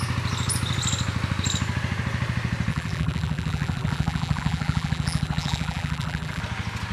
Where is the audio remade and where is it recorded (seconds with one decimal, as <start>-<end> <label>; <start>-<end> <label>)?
0.0-2.7 recorded; 2.7-6.4 remade; 6.4-6.9 recorded